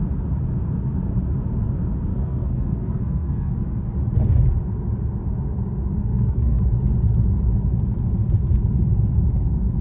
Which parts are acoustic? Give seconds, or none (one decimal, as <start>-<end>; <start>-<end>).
0.0-2.1; 3.5-5.9; 6.6-9.8